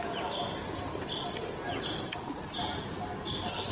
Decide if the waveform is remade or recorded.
recorded